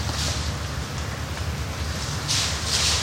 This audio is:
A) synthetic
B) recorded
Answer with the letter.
B